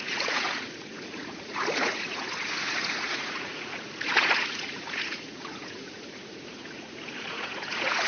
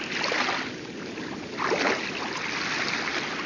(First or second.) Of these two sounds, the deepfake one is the first